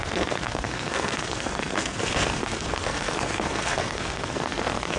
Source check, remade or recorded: remade